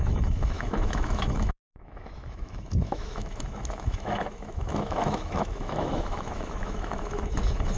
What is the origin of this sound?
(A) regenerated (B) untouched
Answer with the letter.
A